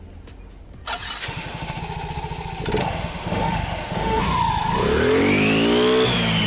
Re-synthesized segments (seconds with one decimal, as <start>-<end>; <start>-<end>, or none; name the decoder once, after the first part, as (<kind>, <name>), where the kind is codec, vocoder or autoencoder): 1.2-1.8 (autoencoder, DAC-VAE); 2.8-4.2

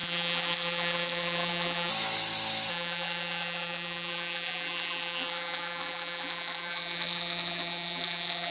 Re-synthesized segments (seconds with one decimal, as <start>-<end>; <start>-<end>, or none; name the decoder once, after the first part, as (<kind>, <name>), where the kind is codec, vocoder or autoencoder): 0.0-1.9 (vocoder, BigVGAN v2); 2.7-8.5

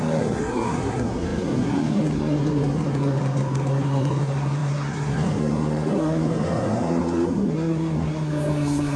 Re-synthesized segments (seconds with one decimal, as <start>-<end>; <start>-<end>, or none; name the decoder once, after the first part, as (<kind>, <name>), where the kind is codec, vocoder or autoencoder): 0.0-9.0 (codec, SNAC)

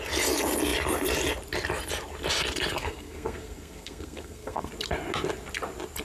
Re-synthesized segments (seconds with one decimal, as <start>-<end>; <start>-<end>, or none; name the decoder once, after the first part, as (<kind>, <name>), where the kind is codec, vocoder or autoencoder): 2.8-4.7 (codec, SNAC)

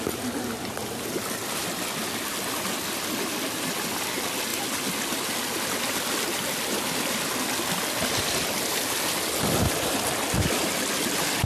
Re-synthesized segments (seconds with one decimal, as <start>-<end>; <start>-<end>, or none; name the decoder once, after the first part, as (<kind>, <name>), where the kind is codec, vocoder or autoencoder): none